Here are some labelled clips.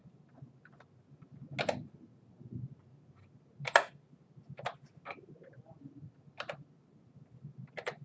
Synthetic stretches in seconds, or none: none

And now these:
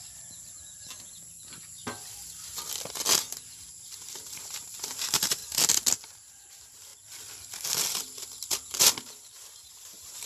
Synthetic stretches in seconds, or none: 0.0-1.8 (vocoder, BigVGAN v2); 4.1-5.4; 6.3-6.9; 9.7-10.3

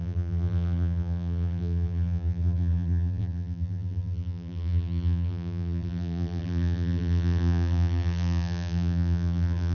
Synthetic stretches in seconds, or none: 0.0-9.7 (vocoder, BigVGAN v2)